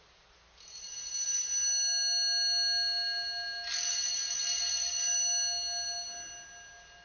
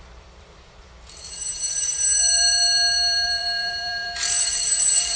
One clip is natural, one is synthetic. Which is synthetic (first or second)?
second